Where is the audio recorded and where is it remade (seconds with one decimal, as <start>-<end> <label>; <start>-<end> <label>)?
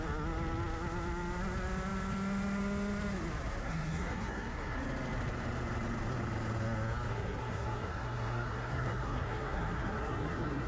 0.0-3.6 recorded; 3.6-4.8 remade; 4.8-7.1 recorded; 7.1-10.7 remade